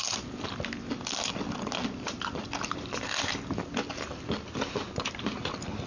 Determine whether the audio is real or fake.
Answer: real